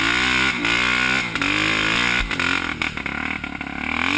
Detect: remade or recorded recorded